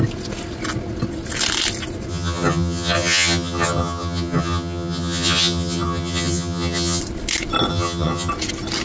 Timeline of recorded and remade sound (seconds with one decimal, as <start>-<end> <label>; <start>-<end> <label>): 0.0-2.1 recorded; 2.1-7.0 remade; 7.0-7.7 recorded; 7.7-8.3 remade; 8.3-8.8 recorded